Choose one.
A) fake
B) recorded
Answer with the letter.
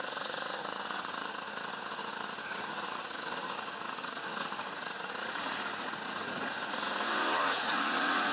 A